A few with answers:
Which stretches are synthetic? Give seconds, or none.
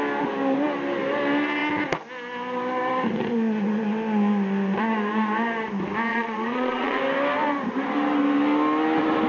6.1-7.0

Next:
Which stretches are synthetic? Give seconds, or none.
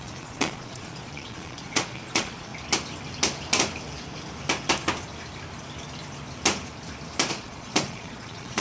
0.0-2.5; 7.3-8.6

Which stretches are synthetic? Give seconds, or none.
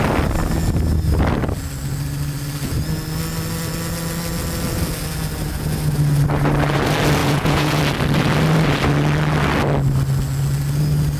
7.2-7.8